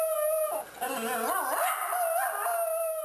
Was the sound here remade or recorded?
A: recorded